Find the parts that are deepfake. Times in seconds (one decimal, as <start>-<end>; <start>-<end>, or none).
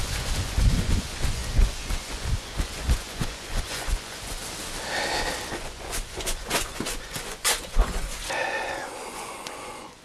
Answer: 0.0-4.4; 5.5-10.0